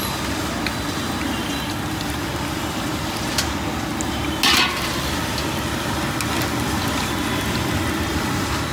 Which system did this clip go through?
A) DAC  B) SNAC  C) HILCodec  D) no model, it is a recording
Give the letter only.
D